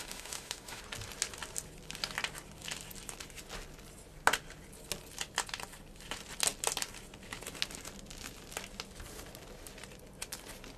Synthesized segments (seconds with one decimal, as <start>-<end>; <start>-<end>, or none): 0.0-0.8